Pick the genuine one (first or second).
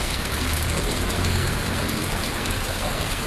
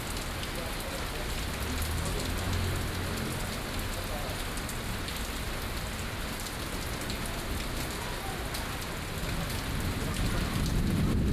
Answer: second